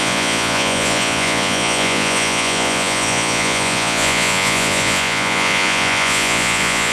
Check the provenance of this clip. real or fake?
fake